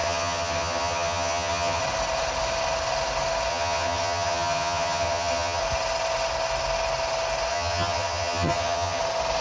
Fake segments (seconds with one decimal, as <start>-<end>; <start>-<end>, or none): 0.0-1.8; 3.5-5.6; 7.5-9.0